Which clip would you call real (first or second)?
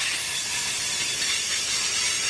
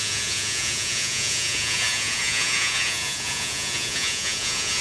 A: first